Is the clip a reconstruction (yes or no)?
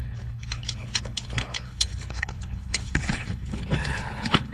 yes